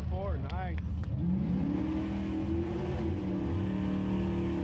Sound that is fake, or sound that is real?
real